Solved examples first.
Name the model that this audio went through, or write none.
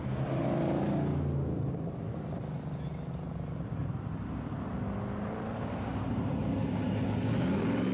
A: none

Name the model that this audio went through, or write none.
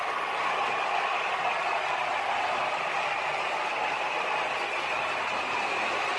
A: none